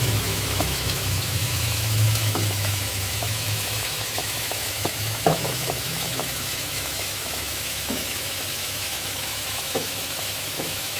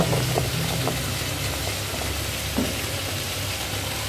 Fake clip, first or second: first